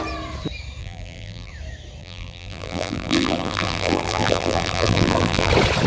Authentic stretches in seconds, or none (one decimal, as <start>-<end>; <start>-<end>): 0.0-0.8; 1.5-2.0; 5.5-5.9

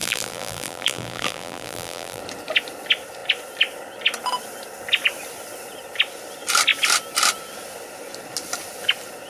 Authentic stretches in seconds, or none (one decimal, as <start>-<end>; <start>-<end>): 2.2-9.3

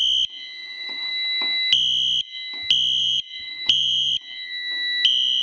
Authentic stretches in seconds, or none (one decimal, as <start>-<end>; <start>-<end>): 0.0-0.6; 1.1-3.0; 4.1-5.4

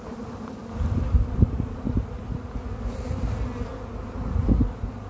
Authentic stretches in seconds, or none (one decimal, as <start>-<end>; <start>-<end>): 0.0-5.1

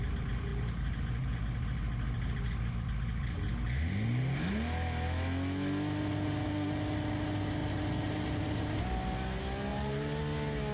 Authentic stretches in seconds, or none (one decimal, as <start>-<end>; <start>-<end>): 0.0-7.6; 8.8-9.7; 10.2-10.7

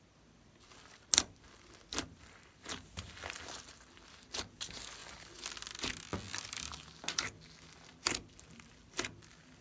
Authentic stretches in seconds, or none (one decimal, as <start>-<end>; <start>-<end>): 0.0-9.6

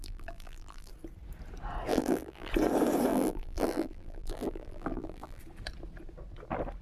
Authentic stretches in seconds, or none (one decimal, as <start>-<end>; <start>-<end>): 0.9-1.9; 2.5-3.1; 5.4-6.8

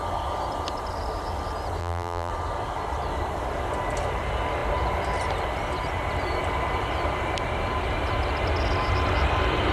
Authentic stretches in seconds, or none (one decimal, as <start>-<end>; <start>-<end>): 0.0-1.8; 2.3-9.7